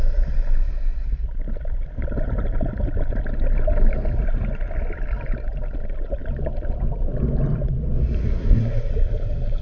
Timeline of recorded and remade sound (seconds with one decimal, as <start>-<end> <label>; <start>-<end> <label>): 0.0-8.2 recorded; 8.2-8.9 remade; 8.9-9.6 recorded